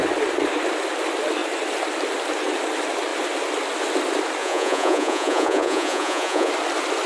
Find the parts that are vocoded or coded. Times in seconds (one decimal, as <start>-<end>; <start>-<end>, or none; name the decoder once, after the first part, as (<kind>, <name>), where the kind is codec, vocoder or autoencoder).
4.4-6.5 (vocoder, Vocos)

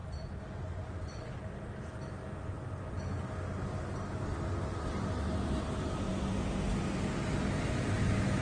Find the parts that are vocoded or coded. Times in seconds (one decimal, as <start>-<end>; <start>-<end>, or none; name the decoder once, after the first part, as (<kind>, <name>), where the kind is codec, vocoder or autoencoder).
0.0-1.6 (vocoder, BigVGAN v2)

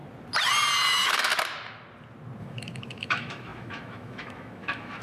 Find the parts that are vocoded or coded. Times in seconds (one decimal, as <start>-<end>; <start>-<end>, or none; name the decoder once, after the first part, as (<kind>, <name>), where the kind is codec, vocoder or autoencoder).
0.9-1.3 (autoencoder, DAC-VAE); 2.4-5.0

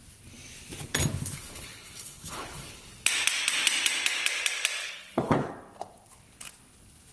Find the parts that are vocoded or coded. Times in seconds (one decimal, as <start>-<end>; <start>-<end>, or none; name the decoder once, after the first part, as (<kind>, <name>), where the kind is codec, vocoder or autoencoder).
1.1-2.9 (codec, HILCodec); 4.8-5.5

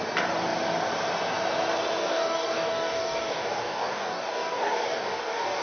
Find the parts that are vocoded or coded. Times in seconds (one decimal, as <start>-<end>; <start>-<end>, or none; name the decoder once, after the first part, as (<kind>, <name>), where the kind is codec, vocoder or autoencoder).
2.0-5.6 (codec, DAC)